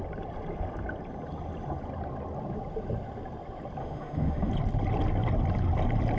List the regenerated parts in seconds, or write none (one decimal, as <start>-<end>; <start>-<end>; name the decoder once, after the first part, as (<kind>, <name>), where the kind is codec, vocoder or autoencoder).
3.8-4.5 (autoencoder, DAC-VAE)